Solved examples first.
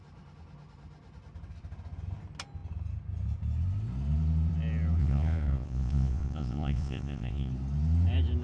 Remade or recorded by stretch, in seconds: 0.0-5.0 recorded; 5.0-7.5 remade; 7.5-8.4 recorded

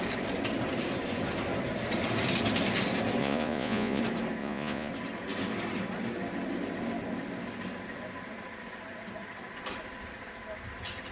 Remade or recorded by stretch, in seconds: 0.0-3.2 recorded; 3.2-4.0 remade; 4.0-4.4 recorded; 4.4-4.9 remade; 4.9-11.1 recorded

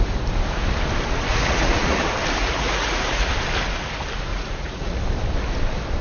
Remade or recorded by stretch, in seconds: 0.0-1.3 recorded; 1.3-2.0 remade; 2.0-2.4 recorded; 2.4-3.3 remade; 3.3-4.3 recorded; 4.3-5.0 remade; 5.0-6.0 recorded

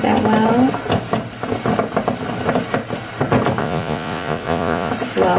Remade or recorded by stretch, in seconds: 0.0-3.6 recorded; 3.6-4.9 remade; 4.9-5.4 recorded